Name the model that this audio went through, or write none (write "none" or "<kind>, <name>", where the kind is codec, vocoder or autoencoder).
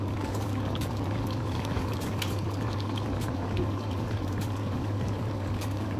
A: codec, DAC